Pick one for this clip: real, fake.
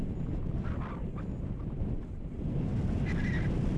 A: real